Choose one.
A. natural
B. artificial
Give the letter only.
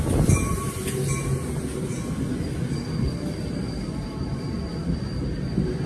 A